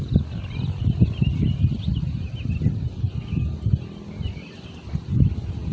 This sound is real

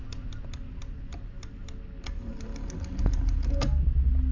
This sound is real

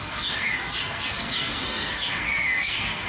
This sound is fake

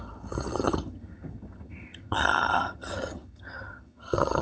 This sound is fake